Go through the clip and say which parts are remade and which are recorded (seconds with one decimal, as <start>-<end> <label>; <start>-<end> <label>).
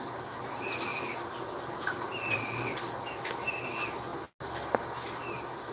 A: 0.0-5.7 recorded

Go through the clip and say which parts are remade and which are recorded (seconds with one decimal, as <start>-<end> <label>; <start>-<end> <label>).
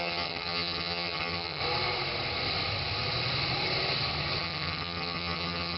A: 0.0-1.6 remade; 1.6-4.4 recorded; 4.4-5.8 remade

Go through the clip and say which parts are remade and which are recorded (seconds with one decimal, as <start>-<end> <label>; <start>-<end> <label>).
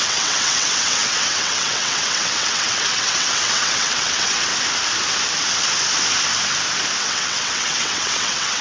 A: 0.0-4.5 remade; 4.5-7.0 recorded; 7.0-8.6 remade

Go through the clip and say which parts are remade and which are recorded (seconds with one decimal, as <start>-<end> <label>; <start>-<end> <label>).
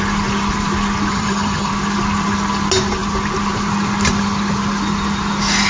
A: 0.0-1.1 recorded; 1.1-1.7 remade; 1.7-5.7 recorded